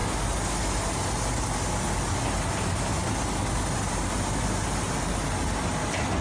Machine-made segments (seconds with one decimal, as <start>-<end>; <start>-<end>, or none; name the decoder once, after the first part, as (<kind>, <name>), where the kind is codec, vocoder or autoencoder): none